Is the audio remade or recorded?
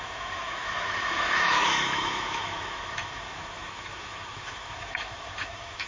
remade